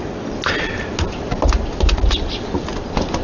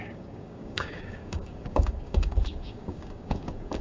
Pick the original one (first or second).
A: first